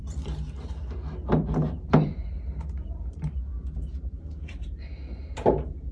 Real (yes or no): no